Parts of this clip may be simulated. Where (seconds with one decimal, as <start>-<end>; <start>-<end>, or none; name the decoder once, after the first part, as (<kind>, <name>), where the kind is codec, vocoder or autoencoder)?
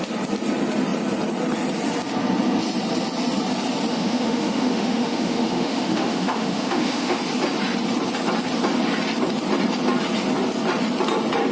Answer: 3.9-7.2 (autoencoder, DAC-VAE)